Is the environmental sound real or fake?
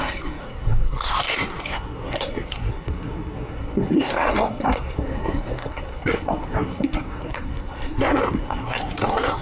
fake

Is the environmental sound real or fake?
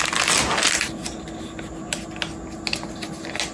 real